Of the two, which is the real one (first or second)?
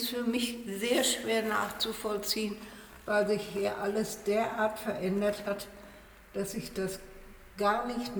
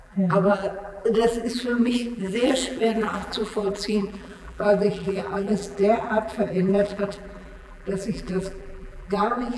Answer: first